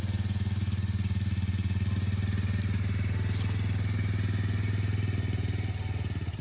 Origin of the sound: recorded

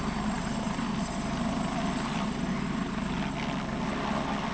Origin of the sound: recorded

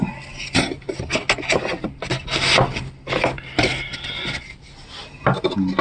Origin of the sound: recorded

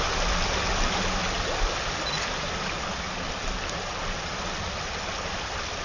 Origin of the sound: recorded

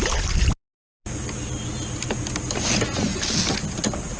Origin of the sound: recorded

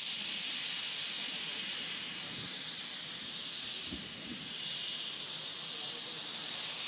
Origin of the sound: recorded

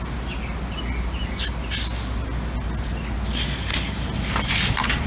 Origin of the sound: recorded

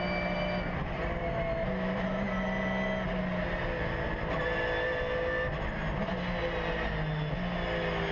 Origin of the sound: recorded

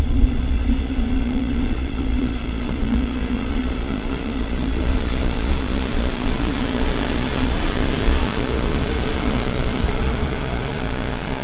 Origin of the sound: remade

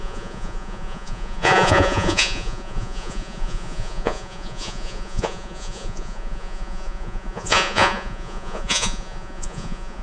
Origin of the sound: remade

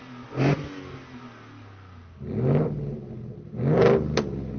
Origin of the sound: recorded